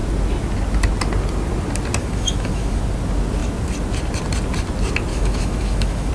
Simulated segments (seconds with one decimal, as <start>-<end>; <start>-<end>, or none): 2.0-2.8; 5.1-6.1